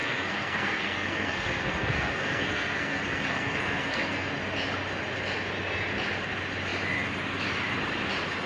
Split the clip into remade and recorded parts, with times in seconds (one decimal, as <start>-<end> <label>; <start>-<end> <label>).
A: 0.0-4.3 remade; 4.3-8.5 recorded